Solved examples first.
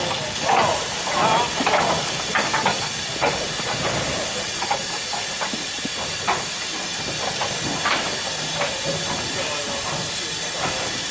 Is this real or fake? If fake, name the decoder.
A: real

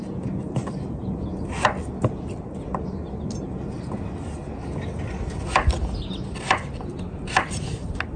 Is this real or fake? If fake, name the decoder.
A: real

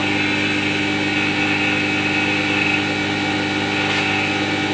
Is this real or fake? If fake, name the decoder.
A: real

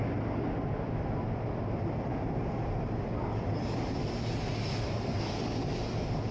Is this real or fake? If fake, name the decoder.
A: real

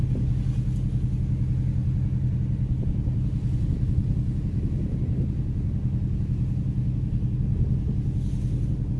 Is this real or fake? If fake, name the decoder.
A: real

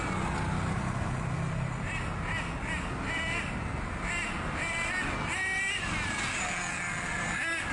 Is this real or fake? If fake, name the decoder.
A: real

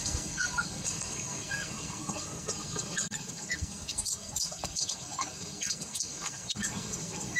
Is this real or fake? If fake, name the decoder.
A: fake, codec, SNAC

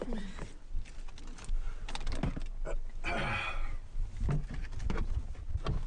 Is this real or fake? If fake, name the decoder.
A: real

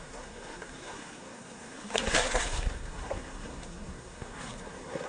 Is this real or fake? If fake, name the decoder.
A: fake, codec, SNAC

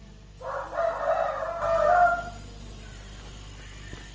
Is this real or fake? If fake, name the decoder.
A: real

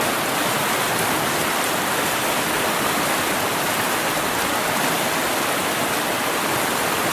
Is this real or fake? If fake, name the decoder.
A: real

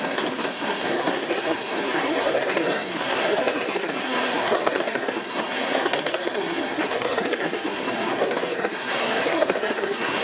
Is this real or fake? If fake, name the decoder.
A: fake, codec, SNAC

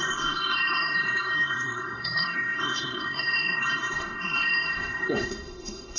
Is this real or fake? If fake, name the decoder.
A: fake, codec, SNAC